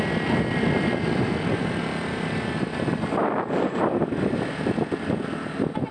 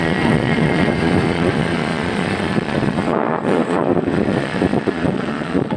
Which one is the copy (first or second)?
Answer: second